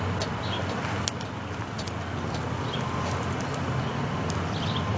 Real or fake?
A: real